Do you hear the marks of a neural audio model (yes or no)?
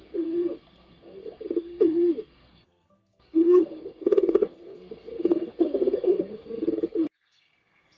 yes